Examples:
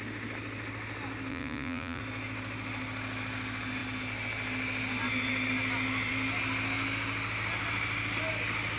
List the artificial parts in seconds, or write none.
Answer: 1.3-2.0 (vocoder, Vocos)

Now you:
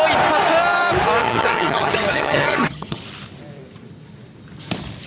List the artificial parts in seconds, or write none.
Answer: 1.2-3.0 (vocoder, HiFi-GAN)